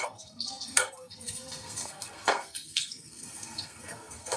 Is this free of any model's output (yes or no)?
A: no